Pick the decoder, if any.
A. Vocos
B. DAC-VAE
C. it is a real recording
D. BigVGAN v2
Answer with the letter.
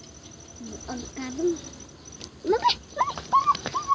C